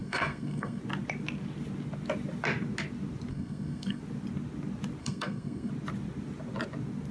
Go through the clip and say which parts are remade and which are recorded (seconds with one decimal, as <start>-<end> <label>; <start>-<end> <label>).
0.0-0.8 remade; 0.8-3.3 recorded; 3.3-4.0 remade; 4.0-5.0 recorded; 5.0-5.7 remade; 5.7-7.1 recorded